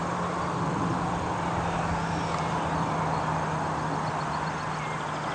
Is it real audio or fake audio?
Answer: real